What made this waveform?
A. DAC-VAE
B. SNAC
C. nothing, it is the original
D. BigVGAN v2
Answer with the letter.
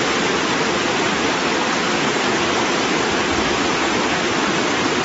C